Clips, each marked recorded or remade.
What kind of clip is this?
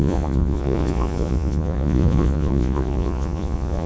remade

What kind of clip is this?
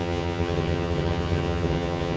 remade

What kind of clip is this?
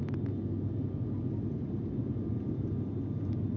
recorded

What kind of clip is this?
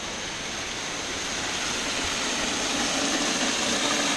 recorded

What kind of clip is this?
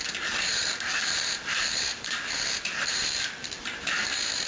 remade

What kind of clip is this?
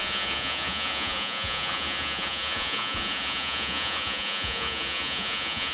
remade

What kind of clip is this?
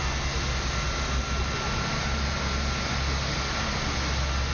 recorded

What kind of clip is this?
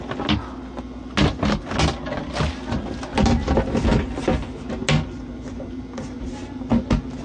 recorded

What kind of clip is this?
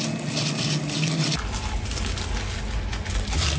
recorded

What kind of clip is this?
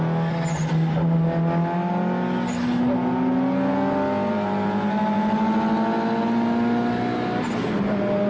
recorded